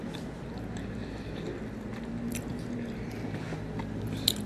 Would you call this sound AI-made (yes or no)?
no